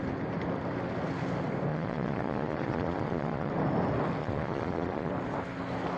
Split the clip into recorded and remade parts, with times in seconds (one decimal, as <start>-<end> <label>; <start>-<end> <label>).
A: 0.0-1.7 recorded; 1.7-3.5 remade; 3.5-4.2 recorded; 4.2-5.1 remade; 5.1-6.0 recorded